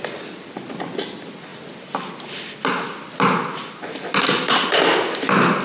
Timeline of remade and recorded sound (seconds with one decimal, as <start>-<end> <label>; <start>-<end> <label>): 0.0-5.6 recorded